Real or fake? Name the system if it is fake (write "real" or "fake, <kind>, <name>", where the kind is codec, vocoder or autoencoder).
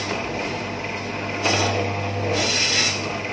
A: real